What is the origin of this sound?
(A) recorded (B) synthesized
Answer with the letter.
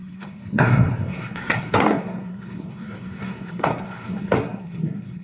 B